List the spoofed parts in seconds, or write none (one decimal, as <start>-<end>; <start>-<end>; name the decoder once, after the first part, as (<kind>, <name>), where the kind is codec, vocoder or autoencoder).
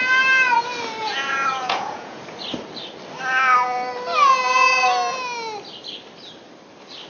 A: 1.0-2.2 (vocoder, Vocos)